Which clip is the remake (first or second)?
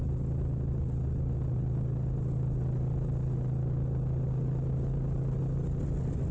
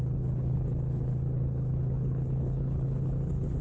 second